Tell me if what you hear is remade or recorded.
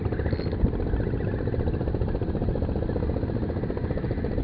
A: recorded